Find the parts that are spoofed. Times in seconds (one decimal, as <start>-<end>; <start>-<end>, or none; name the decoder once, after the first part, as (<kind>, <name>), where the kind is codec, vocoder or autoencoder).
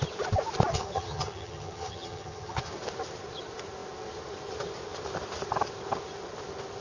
0.7-2.7 (vocoder, HiFi-GAN)